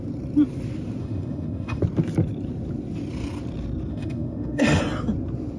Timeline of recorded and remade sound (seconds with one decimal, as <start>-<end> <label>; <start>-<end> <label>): 0.0-1.0 recorded; 1.0-1.8 remade; 1.8-3.9 recorded; 3.9-4.8 remade; 4.8-5.6 recorded